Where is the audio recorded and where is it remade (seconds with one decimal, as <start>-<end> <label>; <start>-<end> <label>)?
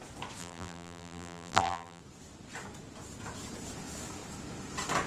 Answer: 0.0-0.4 recorded; 0.4-2.0 remade; 2.0-5.1 recorded